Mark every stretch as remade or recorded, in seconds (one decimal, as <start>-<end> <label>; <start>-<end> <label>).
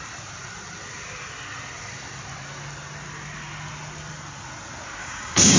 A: 0.0-5.0 recorded; 5.0-5.6 remade